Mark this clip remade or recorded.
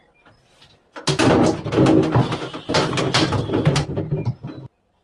recorded